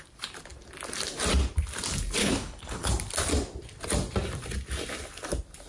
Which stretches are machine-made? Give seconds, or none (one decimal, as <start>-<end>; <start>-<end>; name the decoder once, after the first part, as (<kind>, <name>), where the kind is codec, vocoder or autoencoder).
2.2-2.9 (codec, HILCodec)